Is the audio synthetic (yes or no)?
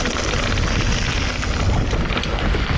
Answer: no